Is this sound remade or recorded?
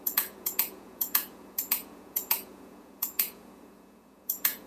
remade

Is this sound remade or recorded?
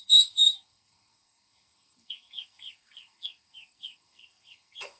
remade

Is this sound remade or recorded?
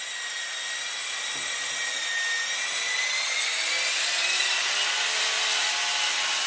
recorded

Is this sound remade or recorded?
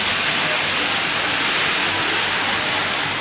recorded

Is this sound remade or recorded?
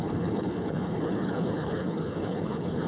remade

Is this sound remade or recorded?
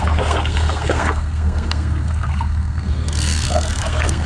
remade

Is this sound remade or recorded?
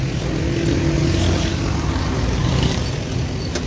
recorded